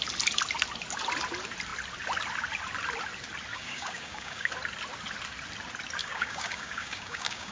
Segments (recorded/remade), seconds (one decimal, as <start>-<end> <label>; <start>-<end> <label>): 0.0-3.5 recorded; 3.5-4.5 remade; 4.5-6.0 recorded; 6.0-7.5 remade